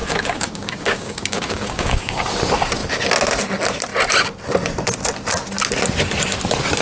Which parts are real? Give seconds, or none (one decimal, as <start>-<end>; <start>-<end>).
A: 2.3-6.8